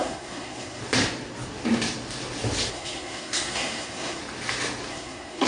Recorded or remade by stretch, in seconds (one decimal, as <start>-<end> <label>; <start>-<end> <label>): 0.0-0.8 remade; 0.8-2.7 recorded; 2.7-4.2 remade; 4.2-4.9 recorded; 4.9-5.5 remade